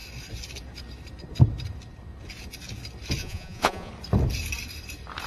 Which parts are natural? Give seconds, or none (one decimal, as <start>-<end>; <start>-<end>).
0.0-3.2; 3.9-5.3